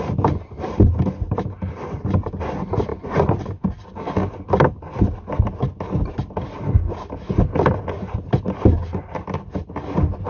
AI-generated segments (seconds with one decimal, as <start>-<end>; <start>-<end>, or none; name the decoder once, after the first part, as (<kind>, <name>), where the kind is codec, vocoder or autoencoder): none